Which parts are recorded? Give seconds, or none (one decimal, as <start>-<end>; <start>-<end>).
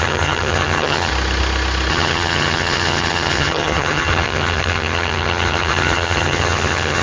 1.1-1.9